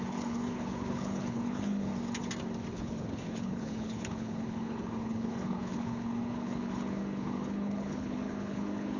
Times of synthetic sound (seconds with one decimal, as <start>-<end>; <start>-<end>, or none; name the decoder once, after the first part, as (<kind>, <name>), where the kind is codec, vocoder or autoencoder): 0.0-1.9 (codec, HILCodec); 2.7-9.0